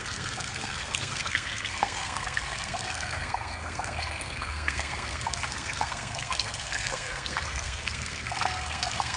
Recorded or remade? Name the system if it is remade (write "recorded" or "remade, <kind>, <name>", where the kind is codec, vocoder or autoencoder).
remade, codec, SNAC